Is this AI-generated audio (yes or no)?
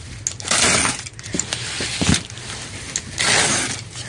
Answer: no